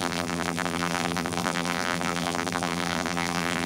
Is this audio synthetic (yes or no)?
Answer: yes